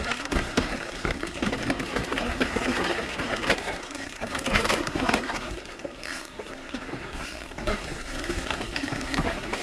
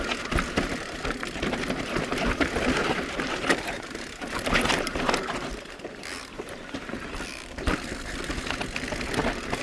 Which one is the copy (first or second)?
first